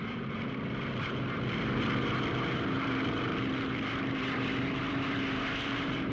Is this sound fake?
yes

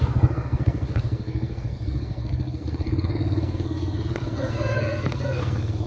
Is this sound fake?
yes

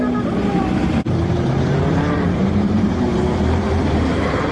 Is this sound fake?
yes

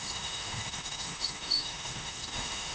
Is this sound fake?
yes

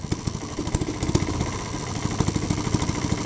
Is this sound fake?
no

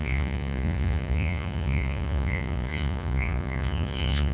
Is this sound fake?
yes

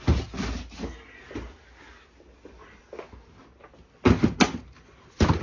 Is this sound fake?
no